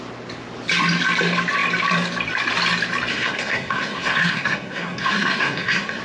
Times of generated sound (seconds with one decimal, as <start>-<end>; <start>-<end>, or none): 3.1-6.0